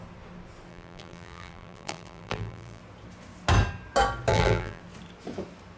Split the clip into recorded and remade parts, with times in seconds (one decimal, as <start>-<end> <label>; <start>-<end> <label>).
0.0-0.7 recorded; 0.7-2.8 remade; 2.8-4.3 recorded; 4.3-4.8 remade; 4.8-5.8 recorded

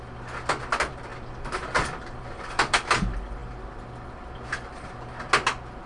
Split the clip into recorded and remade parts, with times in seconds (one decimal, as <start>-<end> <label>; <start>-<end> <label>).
0.0-1.1 recorded; 1.1-2.9 remade; 2.9-3.4 recorded; 3.4-4.5 remade; 4.5-5.9 recorded

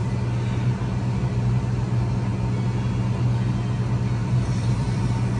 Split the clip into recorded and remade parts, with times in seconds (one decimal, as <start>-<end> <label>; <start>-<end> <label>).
0.0-4.2 recorded; 4.2-5.0 remade; 5.0-5.4 recorded